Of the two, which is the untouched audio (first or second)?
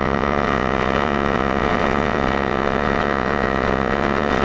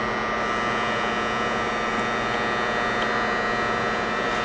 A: second